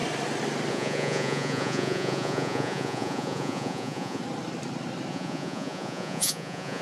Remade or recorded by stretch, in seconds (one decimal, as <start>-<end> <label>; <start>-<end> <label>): 0.0-0.7 recorded; 0.7-4.2 remade; 4.2-5.1 recorded; 5.1-6.8 remade